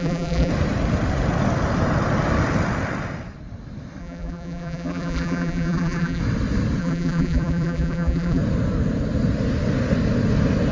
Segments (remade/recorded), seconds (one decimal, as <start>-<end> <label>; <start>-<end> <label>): 0.0-0.5 remade; 0.5-4.0 recorded; 4.0-6.2 remade; 6.2-6.8 recorded; 6.8-8.4 remade; 8.4-10.7 recorded

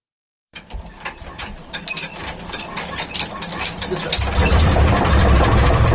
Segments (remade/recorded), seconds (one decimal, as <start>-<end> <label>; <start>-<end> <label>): 0.0-0.9 remade; 0.9-4.4 recorded; 4.4-5.9 remade

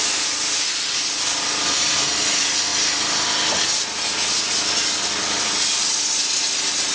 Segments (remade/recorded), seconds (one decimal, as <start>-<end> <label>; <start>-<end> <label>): 0.0-6.9 recorded

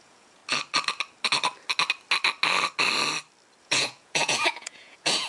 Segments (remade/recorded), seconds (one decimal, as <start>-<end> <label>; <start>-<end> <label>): 0.0-0.4 remade; 0.4-3.6 recorded; 3.6-5.3 remade

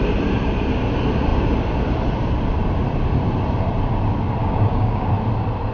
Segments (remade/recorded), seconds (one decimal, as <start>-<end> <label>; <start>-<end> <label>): 0.0-4.4 recorded; 4.4-5.1 remade; 5.1-5.7 recorded

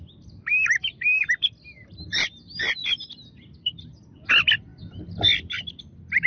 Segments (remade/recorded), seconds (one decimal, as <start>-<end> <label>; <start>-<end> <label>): 0.0-6.3 recorded